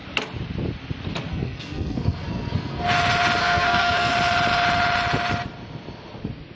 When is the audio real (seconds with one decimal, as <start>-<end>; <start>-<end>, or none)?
0.0-1.3; 2.8-3.4; 4.1-6.6